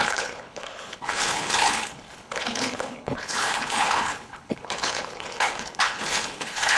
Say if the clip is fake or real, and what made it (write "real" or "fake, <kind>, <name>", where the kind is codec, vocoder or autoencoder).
fake, codec, HILCodec